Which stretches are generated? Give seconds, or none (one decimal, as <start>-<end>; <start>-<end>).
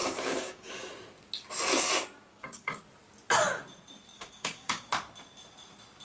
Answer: 0.0-0.7; 2.3-2.8; 4.1-4.9